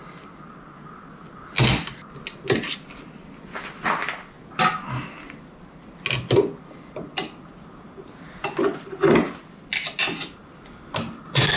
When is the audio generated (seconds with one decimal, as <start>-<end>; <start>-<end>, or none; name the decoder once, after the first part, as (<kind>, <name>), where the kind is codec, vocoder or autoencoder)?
none